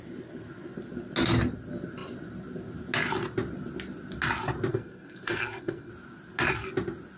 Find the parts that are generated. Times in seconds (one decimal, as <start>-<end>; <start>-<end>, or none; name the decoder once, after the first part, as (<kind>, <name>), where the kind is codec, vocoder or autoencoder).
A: 4.7-5.9 (codec, SNAC)